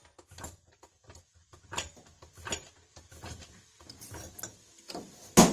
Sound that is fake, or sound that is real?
real